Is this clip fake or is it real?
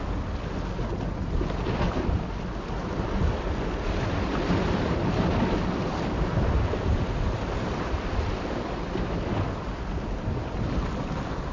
real